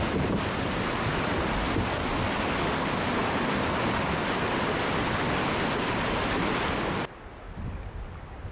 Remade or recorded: recorded